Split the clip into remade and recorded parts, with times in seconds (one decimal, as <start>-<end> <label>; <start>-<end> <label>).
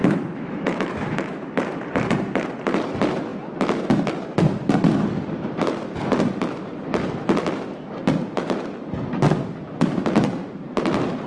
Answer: 0.0-1.5 remade; 1.5-11.3 recorded